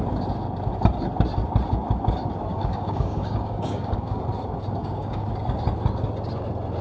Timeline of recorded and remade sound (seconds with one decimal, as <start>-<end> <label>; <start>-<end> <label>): 0.0-2.5 recorded; 2.5-4.2 remade; 4.2-4.8 recorded; 4.8-5.3 remade; 5.3-6.8 recorded